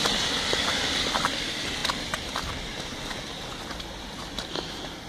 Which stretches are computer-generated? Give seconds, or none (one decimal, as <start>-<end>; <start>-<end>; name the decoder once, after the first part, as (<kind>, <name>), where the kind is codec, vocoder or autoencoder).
none